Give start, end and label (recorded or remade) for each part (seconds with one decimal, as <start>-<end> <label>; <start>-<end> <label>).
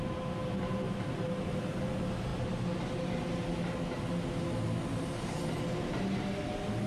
0.0-6.9 recorded